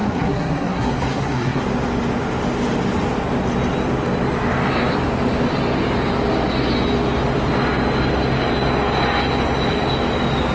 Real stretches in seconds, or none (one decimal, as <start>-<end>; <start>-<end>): 1.6-10.5